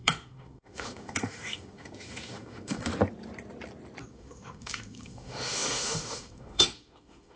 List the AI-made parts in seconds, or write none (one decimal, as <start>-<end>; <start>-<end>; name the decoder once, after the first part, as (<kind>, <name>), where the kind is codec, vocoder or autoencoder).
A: 0.0-2.9 (autoencoder, DAC-VAE); 4.1-7.4